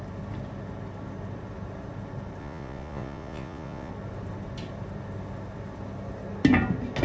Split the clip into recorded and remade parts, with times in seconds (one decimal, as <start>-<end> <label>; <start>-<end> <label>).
0.0-2.4 recorded; 2.4-3.9 remade; 3.9-7.0 recorded